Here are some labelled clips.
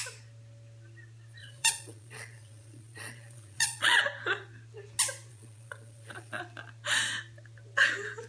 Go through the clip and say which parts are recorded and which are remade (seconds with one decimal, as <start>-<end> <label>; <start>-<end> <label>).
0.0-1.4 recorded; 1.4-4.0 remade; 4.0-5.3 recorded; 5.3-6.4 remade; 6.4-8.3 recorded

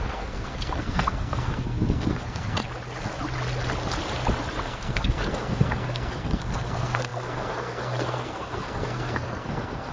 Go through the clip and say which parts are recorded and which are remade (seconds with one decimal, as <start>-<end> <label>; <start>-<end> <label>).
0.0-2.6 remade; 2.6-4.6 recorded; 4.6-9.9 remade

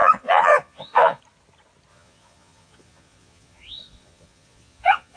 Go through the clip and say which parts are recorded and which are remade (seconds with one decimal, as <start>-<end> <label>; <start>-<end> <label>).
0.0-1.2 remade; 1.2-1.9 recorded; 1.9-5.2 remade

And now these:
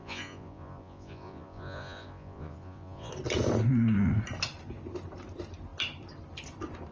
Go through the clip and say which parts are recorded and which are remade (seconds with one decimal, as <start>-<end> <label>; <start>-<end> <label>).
0.0-3.1 remade; 3.1-6.9 recorded

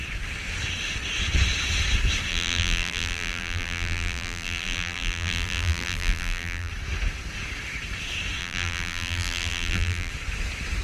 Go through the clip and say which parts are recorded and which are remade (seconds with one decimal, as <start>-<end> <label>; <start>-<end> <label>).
0.0-2.3 recorded; 2.3-6.7 remade; 6.7-8.4 recorded; 8.4-10.1 remade; 10.1-10.8 recorded

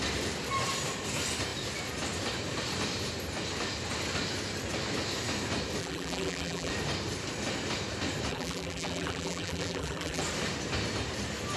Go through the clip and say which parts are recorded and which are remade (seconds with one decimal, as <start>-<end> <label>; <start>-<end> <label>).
0.0-5.8 recorded; 5.8-6.7 remade; 6.7-8.3 recorded; 8.3-10.2 remade; 10.2-11.6 recorded